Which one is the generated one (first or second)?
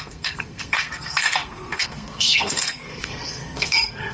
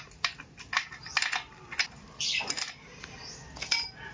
first